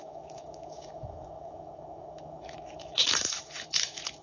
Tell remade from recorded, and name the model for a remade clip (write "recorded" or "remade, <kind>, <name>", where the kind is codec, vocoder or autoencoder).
remade, autoencoder, DAC-VAE